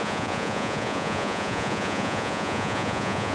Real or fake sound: fake